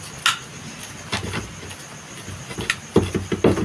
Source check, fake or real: real